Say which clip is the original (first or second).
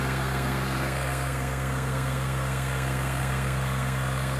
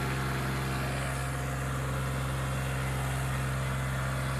second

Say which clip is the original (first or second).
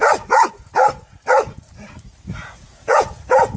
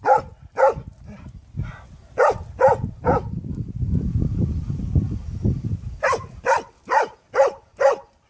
second